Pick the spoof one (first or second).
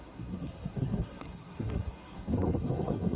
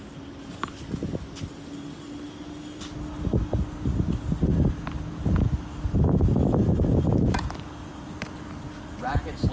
first